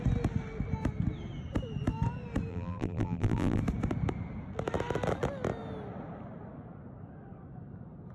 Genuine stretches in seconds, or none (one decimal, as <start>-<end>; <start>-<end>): 0.0-2.5; 3.6-8.1